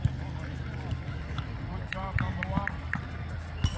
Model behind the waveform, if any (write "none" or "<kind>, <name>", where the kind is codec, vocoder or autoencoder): none